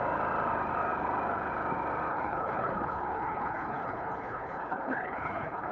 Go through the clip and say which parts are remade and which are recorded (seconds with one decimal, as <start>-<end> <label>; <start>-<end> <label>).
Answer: 0.0-2.1 recorded; 2.1-5.7 remade